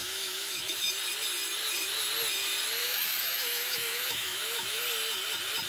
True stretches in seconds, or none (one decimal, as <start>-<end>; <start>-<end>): 0.9-2.8; 4.8-5.7

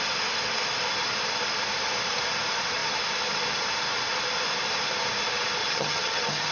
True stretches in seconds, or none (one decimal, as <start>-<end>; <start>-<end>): 0.0-5.6

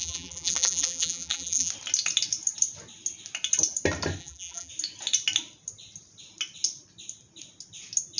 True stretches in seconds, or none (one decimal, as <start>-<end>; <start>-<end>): 1.7-4.2; 4.7-8.2

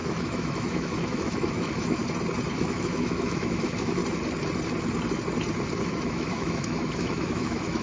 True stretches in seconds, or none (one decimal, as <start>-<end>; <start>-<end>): 2.0-2.5; 4.0-5.8

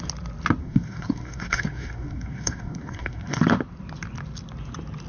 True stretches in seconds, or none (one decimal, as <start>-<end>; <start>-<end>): 0.0-0.6; 3.4-5.1

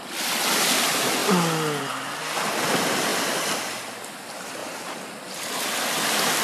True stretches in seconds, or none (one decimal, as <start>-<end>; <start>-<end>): 0.0-6.4

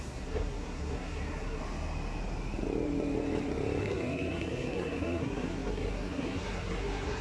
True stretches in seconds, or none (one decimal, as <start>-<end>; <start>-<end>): 1.6-3.8